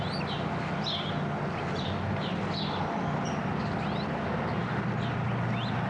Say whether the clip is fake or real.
real